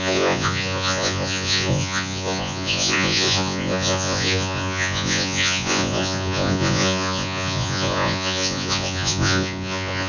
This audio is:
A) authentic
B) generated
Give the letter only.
B